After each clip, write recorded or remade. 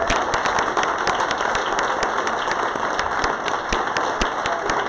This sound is recorded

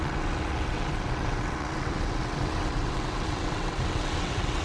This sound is remade